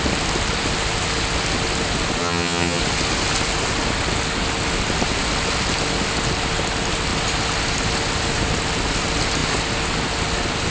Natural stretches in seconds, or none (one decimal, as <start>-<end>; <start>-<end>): 0.0-2.2; 2.8-10.7